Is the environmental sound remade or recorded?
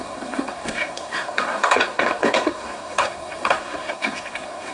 remade